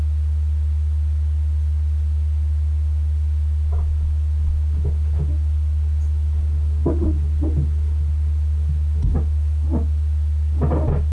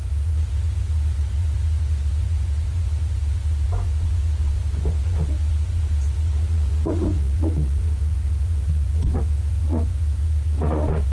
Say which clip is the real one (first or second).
first